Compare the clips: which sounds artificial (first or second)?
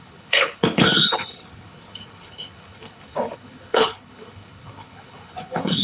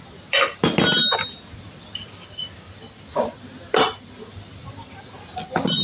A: first